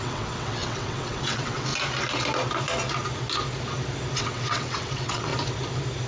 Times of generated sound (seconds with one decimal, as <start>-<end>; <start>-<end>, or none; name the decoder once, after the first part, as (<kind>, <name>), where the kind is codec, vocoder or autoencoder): 0.0-1.7 (vocoder, WaveNeXt); 4.2-5.3

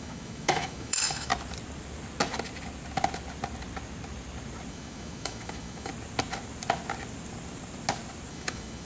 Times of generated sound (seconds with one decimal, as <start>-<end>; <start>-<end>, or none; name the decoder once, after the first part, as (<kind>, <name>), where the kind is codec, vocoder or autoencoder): 0.0-1.3 (autoencoder, DAC-VAE); 4.7-5.9; 8.3-8.9

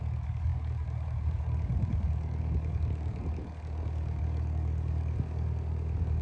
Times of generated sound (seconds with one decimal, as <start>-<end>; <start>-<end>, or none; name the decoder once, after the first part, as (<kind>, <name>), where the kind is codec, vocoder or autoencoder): 0.0-6.2 (codec, DAC)

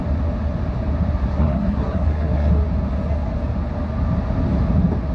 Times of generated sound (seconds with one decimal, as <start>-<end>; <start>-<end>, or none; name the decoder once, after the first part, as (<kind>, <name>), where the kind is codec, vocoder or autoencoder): 1.3-2.5 (codec, SNAC)